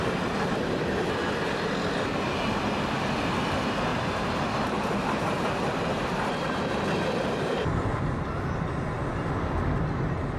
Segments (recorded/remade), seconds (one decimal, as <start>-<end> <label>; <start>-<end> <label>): 0.0-3.9 recorded; 3.9-6.6 remade; 6.6-10.4 recorded